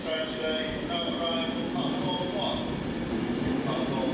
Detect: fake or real real